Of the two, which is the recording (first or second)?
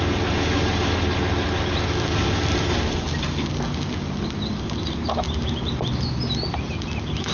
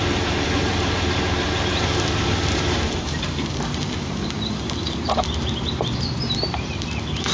first